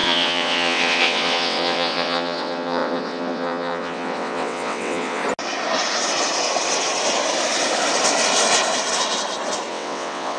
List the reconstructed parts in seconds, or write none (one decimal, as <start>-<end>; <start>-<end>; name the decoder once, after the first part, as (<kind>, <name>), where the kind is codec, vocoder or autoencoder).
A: 0.0-5.2 (vocoder, WaveNeXt); 9.7-10.4